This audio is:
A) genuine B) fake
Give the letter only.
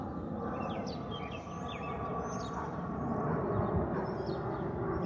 A